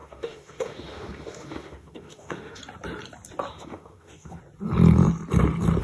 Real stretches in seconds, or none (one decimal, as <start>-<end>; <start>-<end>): 2.6-3.5; 4.4-5.8